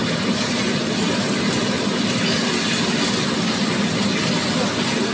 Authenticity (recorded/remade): recorded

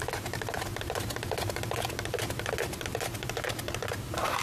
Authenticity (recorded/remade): recorded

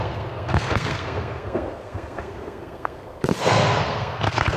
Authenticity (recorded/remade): remade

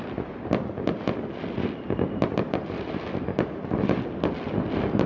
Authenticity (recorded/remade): recorded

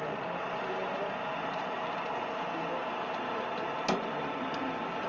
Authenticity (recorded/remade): recorded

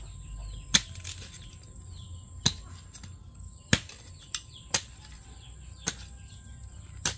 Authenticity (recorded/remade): recorded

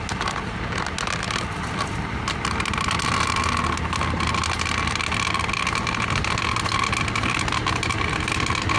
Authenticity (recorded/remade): recorded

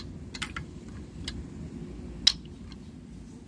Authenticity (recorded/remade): recorded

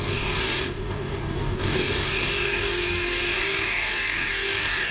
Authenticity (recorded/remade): remade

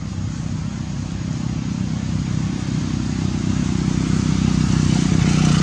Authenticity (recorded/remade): recorded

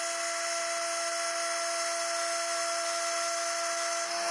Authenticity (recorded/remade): recorded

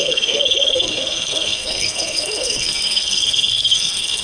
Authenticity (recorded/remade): remade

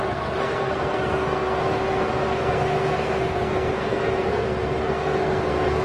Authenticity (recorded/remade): remade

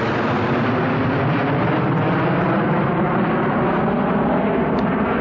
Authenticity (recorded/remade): recorded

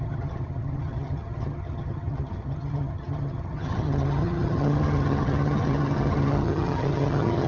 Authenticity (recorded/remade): remade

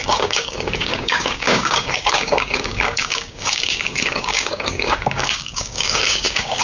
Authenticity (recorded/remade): remade